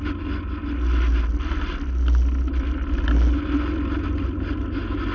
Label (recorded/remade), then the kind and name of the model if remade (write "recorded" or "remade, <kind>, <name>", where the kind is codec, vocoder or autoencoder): recorded